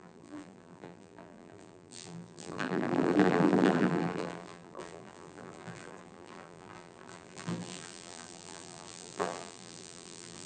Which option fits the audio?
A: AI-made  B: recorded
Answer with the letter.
A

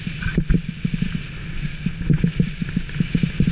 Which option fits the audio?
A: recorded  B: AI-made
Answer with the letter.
A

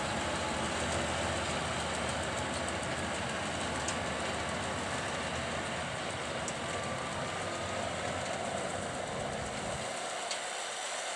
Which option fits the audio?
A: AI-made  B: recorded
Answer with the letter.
B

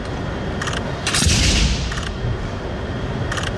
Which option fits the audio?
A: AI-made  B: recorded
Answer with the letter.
B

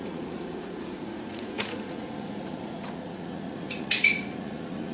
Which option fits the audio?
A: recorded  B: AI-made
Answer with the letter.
B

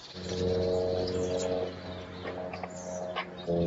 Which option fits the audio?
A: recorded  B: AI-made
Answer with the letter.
A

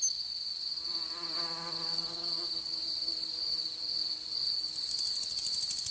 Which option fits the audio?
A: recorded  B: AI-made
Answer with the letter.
A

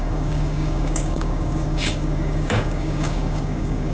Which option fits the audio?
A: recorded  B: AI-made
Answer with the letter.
B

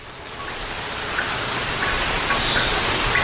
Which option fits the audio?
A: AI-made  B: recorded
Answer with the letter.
B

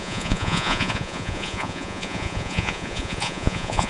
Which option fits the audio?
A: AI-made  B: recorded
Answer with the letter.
A